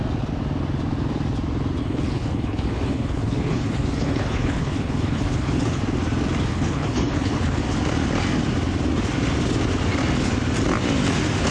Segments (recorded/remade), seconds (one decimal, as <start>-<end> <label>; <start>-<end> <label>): 0.0-1.8 recorded; 1.8-5.8 remade; 5.8-6.5 recorded; 6.5-7.6 remade; 7.6-11.5 recorded